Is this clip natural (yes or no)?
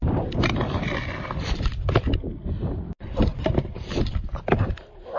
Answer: yes